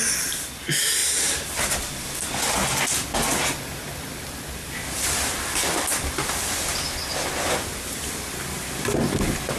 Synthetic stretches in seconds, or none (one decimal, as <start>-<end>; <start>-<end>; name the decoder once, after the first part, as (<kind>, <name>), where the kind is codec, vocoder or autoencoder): none

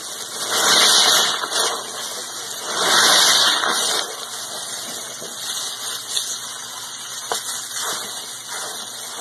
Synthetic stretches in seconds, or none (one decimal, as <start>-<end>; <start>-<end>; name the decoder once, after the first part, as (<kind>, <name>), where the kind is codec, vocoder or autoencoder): 6.7-7.4 (vocoder, BigVGAN v2)

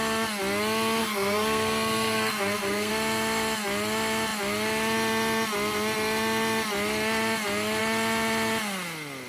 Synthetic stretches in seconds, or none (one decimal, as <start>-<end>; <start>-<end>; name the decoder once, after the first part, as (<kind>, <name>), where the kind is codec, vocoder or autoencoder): 1.0-2.9 (codec, SNAC)

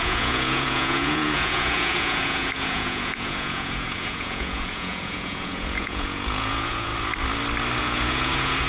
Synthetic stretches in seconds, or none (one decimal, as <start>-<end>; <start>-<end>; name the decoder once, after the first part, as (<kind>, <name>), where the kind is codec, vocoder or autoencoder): 0.0-6.9 (vocoder, Vocos); 7.8-8.7

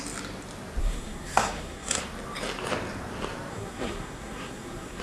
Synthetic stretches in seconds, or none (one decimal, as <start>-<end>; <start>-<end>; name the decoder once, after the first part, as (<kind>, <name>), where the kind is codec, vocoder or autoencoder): 0.8-2.0 (codec, SNAC); 3.5-5.0

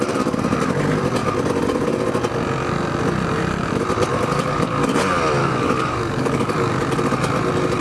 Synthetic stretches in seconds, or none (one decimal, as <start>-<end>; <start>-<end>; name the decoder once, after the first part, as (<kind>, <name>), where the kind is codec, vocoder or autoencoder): 4.1-5.0 (codec, DAC); 5.4-6.8

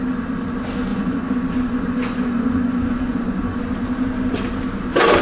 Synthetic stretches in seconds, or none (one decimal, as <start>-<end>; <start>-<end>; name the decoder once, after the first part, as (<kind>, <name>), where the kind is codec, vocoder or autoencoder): 0.9-3.6 (vocoder, Vocos)

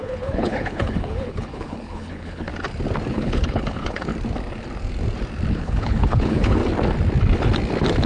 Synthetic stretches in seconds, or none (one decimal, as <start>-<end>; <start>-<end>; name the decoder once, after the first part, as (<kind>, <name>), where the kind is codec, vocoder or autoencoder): 0.0-2.5 (codec, HILCodec); 3.1-4.1; 5.5-6.6